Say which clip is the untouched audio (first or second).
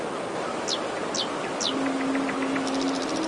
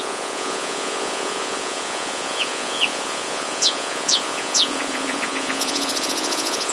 first